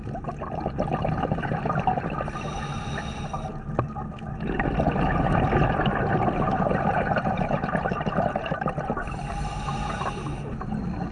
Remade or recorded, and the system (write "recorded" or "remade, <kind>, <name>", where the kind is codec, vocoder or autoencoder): recorded